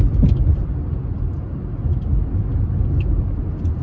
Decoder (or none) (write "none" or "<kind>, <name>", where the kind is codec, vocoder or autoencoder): none